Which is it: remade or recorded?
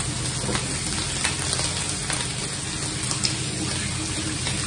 recorded